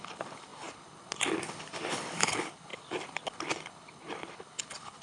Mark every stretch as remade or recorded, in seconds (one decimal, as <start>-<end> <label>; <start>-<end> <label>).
0.0-5.0 remade